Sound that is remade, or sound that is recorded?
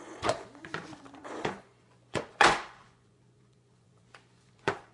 remade